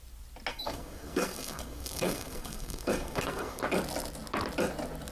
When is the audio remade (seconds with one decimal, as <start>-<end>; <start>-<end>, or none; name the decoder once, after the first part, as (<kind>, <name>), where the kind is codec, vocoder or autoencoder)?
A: 0.5-3.6 (codec, SNAC)